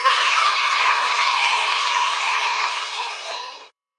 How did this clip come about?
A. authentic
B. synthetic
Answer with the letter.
B